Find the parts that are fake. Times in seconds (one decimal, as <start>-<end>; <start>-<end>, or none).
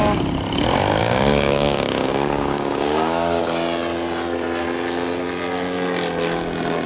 1.0-3.4